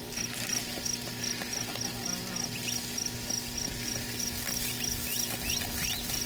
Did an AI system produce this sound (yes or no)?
no